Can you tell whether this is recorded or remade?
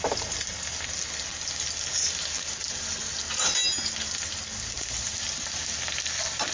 recorded